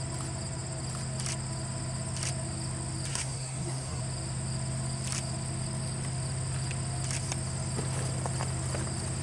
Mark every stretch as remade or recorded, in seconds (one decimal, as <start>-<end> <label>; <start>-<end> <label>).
0.0-3.1 recorded; 3.1-4.0 remade; 4.0-9.2 recorded